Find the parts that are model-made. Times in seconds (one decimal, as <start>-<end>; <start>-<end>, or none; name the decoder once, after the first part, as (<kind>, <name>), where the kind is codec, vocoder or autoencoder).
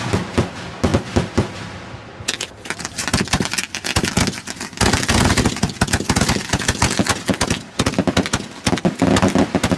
none